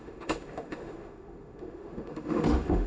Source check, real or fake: fake